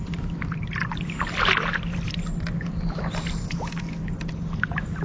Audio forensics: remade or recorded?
recorded